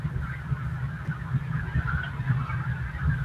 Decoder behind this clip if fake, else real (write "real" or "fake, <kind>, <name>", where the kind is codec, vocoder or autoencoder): real